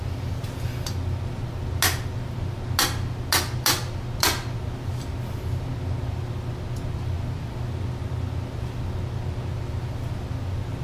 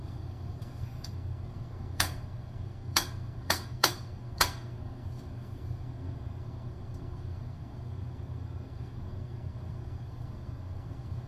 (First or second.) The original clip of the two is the first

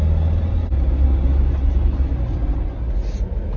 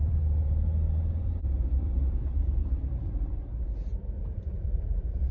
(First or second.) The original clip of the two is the first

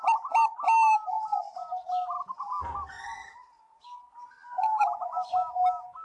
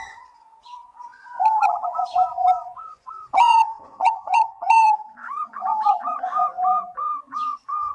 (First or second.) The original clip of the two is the first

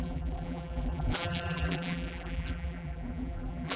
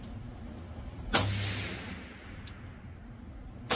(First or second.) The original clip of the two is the second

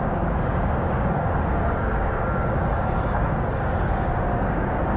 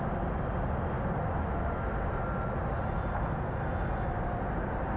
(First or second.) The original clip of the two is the second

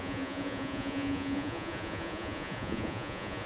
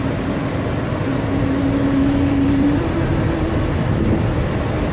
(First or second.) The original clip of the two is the second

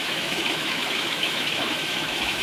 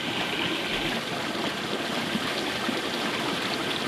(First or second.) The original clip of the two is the second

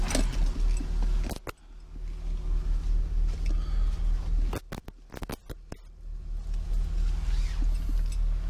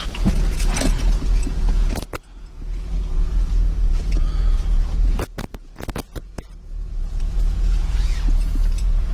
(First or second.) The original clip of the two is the first